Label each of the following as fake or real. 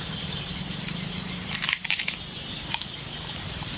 fake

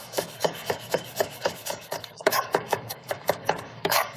fake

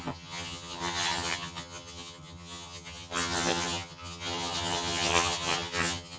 fake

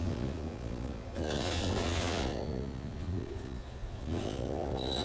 fake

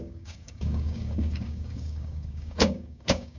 fake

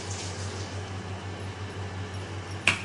real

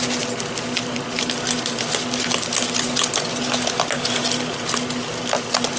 real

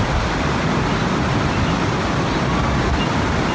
real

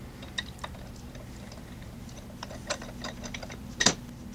real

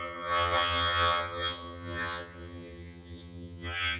fake